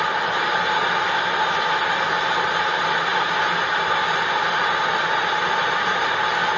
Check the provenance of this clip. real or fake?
real